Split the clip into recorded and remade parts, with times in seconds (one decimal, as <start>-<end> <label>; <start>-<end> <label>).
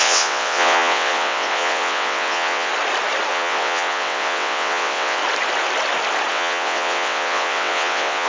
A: 0.0-2.7 remade; 2.7-3.3 recorded; 3.3-5.2 remade; 5.2-6.3 recorded; 6.3-8.3 remade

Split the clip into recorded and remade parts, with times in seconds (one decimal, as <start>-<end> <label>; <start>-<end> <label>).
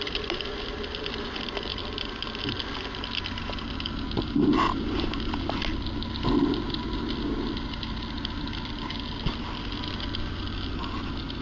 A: 0.0-11.4 recorded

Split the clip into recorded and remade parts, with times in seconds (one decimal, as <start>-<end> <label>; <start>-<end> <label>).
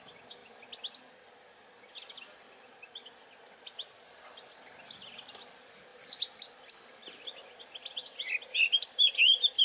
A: 0.0-9.6 recorded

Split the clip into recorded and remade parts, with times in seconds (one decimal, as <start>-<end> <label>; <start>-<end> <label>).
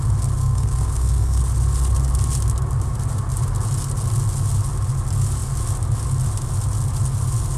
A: 0.0-0.4 recorded; 0.4-1.4 remade; 1.4-7.6 recorded